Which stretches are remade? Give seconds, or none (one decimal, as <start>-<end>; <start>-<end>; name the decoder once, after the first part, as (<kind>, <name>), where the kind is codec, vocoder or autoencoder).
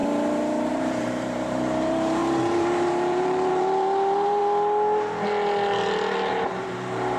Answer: 0.7-4.4 (vocoder, BigVGAN v2); 6.3-7.2